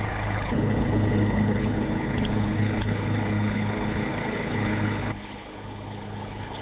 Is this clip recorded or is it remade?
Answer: remade